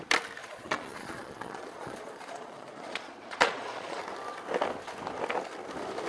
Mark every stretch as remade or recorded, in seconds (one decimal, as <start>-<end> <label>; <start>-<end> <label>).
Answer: 0.0-0.4 recorded; 0.4-4.0 remade; 4.0-6.1 recorded